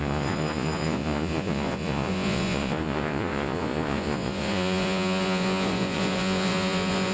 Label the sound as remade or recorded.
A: remade